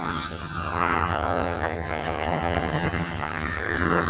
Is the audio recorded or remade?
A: remade